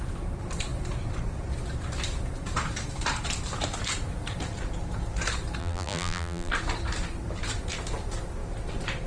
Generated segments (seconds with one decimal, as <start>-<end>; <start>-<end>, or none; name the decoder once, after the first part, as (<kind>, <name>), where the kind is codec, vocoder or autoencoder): 5.6-6.5 (vocoder, BigVGAN v2)